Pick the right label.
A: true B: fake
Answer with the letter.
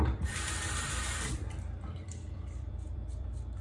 B